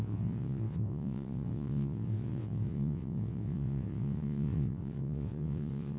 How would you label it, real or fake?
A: fake